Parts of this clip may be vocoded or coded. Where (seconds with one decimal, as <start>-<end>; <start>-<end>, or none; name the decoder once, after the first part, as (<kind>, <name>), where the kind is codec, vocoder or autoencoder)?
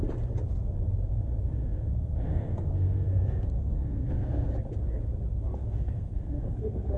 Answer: 2.3-4.5 (codec, SNAC); 5.6-7.0